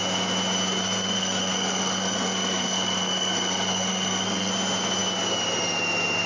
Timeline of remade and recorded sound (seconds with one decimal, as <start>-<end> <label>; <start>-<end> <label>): 0.0-0.7 recorded; 0.7-4.5 remade; 4.5-6.3 recorded